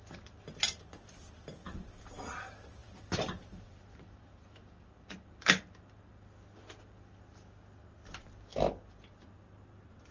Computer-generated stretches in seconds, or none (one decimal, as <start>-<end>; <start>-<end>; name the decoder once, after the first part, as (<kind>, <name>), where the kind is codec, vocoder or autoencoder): 2.8-4.7 (vocoder, BigVGAN v2)